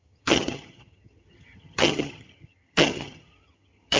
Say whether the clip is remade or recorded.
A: remade